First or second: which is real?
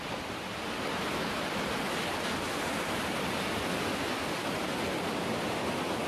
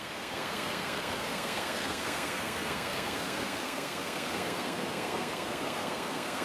first